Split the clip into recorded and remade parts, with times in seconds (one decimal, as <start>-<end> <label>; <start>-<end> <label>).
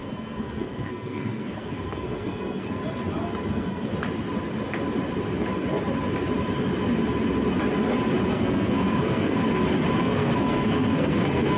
0.0-2.8 remade; 2.8-3.5 recorded; 3.5-3.9 remade; 3.9-8.3 recorded; 8.3-9.4 remade; 9.4-10.0 recorded; 10.0-11.6 remade